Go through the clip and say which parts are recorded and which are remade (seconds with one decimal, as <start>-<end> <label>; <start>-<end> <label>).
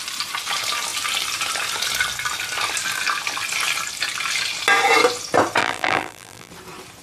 0.0-5.6 recorded; 5.6-6.5 remade; 6.5-7.0 recorded